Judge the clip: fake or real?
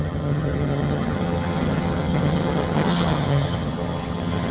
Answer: fake